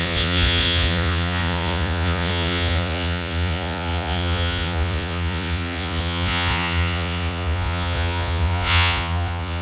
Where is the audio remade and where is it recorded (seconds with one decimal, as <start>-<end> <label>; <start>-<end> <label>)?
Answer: 0.0-9.6 remade